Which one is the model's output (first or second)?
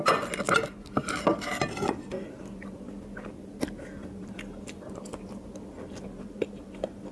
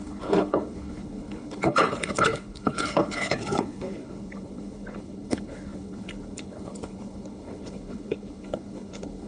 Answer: second